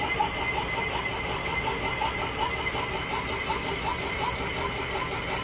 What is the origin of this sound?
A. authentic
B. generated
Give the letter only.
A